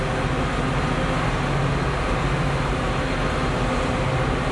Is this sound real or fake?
real